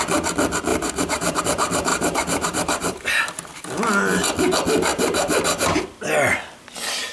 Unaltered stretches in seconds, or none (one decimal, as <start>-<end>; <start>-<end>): 0.0-0.7; 1.4-1.9; 3.1-4.9; 5.8-7.1